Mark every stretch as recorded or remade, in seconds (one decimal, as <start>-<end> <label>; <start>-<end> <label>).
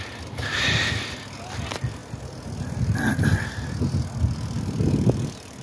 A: 0.0-5.6 recorded